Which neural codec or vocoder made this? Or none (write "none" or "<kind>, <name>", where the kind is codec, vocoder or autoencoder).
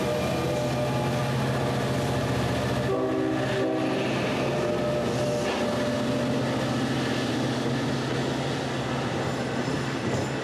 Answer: none